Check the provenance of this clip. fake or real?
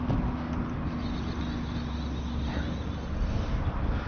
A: real